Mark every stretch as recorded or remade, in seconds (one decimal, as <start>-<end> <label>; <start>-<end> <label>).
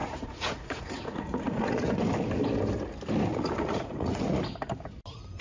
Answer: 0.0-2.0 remade; 2.0-3.3 recorded; 3.3-4.4 remade; 4.4-5.4 recorded